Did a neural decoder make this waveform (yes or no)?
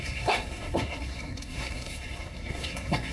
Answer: yes